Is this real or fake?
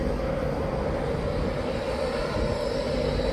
real